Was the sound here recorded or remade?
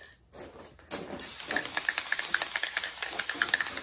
recorded